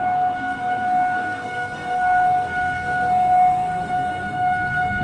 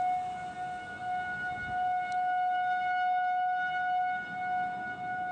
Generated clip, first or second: first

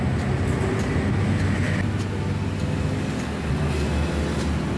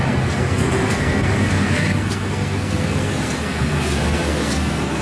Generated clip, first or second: second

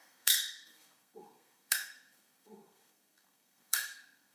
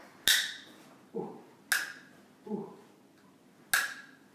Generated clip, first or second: first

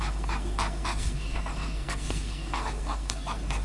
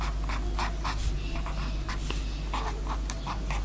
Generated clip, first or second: first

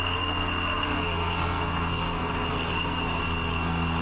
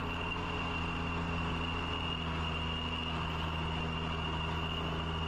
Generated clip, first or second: first